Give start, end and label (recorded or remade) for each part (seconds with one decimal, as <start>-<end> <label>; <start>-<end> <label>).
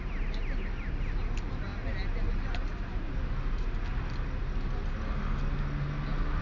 0.0-6.4 recorded